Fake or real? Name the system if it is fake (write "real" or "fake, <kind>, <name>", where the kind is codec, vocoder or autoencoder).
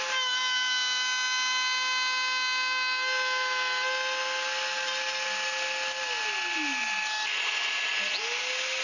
real